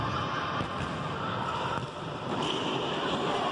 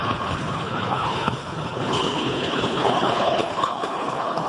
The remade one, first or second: second